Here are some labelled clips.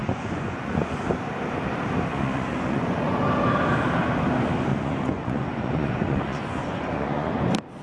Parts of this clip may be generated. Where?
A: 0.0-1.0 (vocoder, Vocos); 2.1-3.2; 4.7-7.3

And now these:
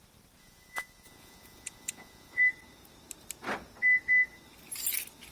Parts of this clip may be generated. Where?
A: 0.4-2.4 (vocoder, Vocos)

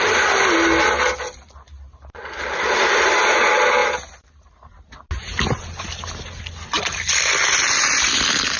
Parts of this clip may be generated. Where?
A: none